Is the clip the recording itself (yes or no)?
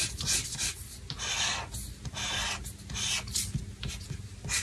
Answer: yes